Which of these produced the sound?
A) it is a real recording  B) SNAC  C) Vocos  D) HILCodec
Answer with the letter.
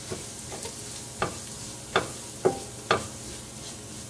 A